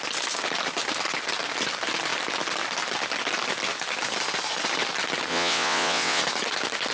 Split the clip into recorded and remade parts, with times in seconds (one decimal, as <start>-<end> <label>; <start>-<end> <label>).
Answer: 0.0-5.3 recorded; 5.3-6.2 remade; 6.2-6.9 recorded